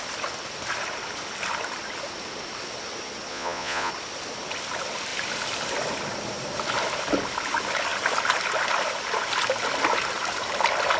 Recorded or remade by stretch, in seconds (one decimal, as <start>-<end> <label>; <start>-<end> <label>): 0.0-3.3 recorded; 3.3-3.9 remade; 3.9-11.0 recorded